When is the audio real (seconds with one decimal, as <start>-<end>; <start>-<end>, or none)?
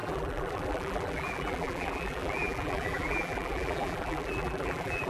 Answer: none